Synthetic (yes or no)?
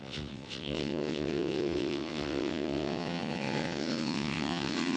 yes